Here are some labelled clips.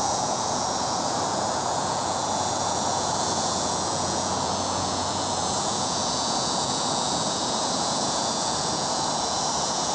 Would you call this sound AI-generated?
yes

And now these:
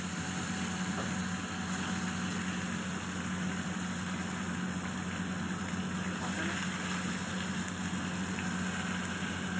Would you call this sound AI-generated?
no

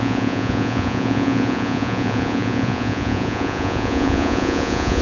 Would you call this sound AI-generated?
yes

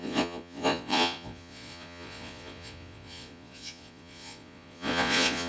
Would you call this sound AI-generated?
yes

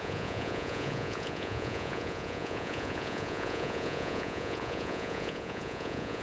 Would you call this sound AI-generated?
yes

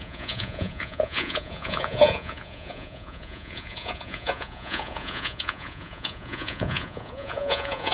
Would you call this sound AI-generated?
yes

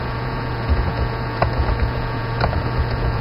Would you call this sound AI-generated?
yes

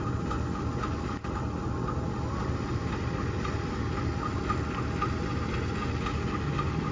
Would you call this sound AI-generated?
no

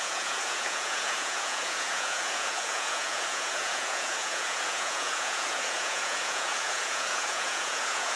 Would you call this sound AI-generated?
yes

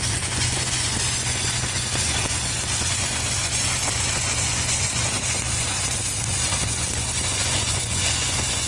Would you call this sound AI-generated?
yes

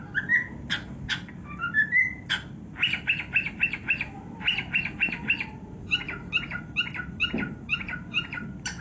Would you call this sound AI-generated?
no